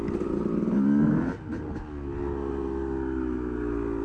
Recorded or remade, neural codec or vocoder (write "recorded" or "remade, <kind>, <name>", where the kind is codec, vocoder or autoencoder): recorded